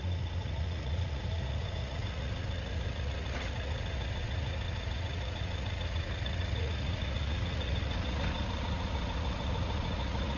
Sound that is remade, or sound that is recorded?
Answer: remade